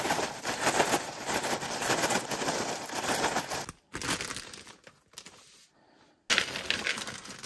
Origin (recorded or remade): recorded